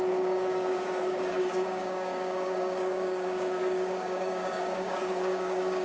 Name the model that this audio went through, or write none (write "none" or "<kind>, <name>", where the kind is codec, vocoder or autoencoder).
codec, DAC